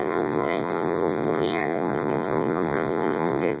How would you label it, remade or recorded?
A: remade